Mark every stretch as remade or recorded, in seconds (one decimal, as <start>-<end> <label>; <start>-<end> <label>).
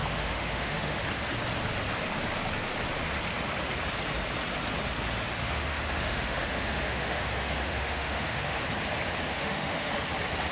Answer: 0.0-1.0 remade; 1.0-5.4 recorded; 5.4-8.6 remade; 8.6-9.3 recorded; 9.3-9.9 remade; 9.9-10.5 recorded